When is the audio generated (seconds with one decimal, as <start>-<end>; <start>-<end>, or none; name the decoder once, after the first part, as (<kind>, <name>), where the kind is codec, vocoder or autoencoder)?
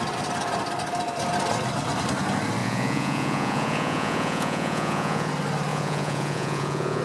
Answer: 2.6-5.3 (vocoder, Vocos); 5.7-7.0